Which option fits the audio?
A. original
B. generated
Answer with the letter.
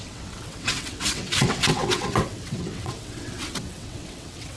B